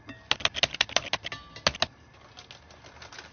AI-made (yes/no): no